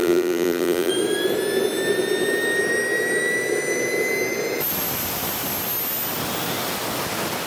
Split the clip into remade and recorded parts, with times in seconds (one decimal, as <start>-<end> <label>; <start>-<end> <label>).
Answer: 0.0-0.9 remade; 0.9-7.5 recorded